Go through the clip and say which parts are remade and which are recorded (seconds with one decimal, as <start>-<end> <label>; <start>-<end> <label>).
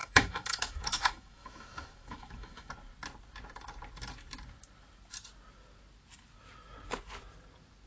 0.0-2.7 remade; 2.7-7.9 recorded